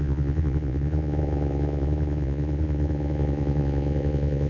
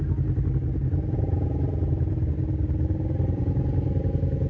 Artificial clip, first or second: first